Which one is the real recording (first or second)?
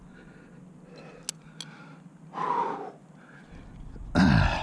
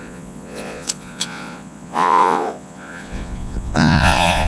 first